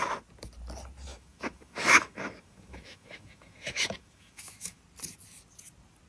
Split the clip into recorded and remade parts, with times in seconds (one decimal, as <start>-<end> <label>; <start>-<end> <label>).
0.0-1.1 recorded; 1.1-4.8 remade; 4.8-6.1 recorded